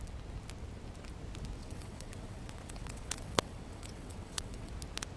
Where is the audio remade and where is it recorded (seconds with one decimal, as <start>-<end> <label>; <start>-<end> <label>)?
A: 0.0-1.6 recorded; 1.6-4.7 remade; 4.7-5.2 recorded